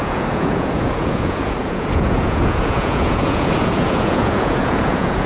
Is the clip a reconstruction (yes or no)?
yes